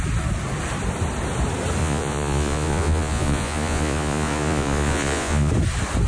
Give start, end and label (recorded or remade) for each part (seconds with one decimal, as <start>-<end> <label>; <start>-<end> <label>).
0.0-1.8 recorded; 1.8-5.5 remade; 5.5-6.1 recorded